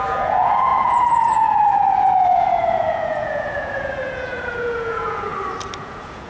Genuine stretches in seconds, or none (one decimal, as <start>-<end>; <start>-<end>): 5.3-5.8